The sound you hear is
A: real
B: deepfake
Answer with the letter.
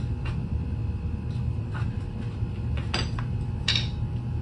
A